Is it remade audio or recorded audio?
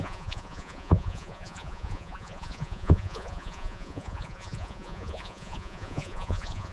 remade